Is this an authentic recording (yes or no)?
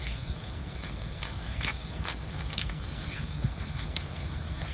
no